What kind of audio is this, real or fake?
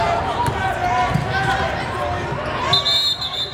real